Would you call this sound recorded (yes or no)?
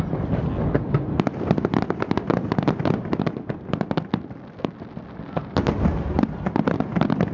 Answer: yes